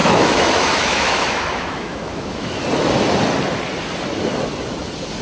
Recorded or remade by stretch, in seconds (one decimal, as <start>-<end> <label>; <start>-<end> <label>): 0.0-2.6 remade; 2.6-5.2 recorded